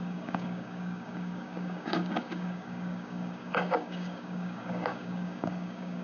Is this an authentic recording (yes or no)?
no